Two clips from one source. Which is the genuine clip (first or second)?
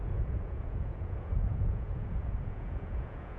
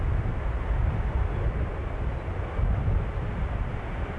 second